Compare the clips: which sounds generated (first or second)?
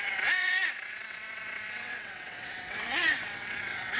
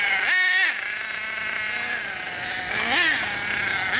first